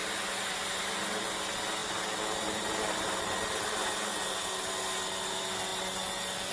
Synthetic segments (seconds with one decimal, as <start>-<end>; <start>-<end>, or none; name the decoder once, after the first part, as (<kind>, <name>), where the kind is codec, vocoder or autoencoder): none